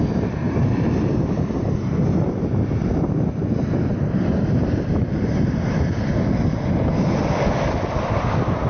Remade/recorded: recorded